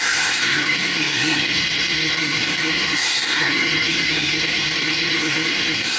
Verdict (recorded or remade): remade